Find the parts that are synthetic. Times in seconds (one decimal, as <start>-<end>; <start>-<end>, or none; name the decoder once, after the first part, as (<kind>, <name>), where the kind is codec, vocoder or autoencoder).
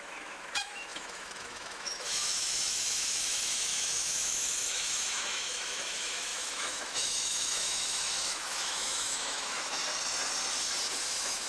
0.0-9.8 (autoencoder, DAC-VAE); 11.0-11.5